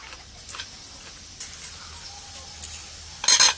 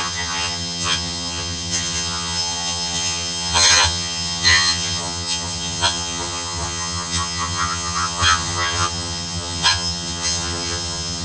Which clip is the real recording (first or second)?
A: first